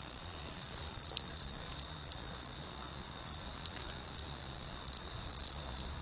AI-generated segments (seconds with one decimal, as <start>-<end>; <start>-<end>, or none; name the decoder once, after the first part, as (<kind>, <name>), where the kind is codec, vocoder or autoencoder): 0.0-6.0 (vocoder, Vocos)